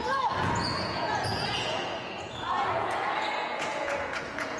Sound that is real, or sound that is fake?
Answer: fake